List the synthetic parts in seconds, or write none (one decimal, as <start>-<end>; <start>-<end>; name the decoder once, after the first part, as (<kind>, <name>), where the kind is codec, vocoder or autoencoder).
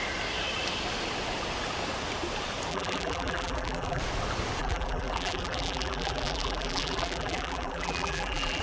2.7-4.0 (vocoder, BigVGAN v2); 4.6-8.6